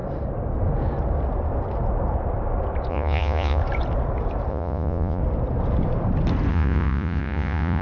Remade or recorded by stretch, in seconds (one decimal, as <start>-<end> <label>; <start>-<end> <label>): 0.0-2.9 recorded; 2.9-3.6 remade; 3.6-4.5 recorded; 4.5-5.2 remade; 5.2-6.5 recorded; 6.5-7.8 remade